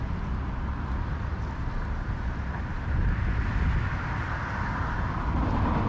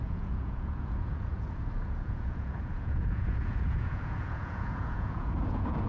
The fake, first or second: second